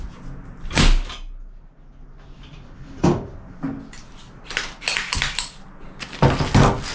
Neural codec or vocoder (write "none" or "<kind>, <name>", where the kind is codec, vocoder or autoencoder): none